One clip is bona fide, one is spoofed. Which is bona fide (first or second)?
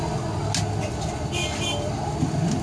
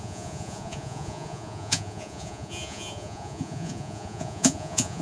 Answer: first